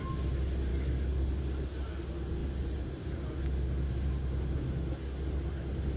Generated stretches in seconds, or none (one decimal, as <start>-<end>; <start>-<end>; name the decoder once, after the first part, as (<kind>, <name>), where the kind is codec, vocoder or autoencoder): 0.7-1.4 (codec, DAC)